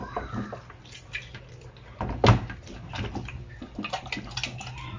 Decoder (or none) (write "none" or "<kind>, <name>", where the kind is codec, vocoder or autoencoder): none